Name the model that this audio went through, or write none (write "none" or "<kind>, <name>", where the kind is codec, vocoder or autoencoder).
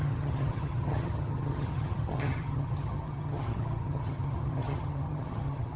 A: vocoder, HiFi-GAN